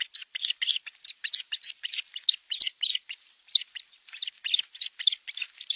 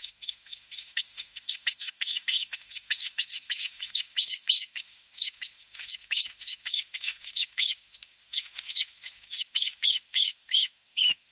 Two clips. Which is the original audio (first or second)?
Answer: first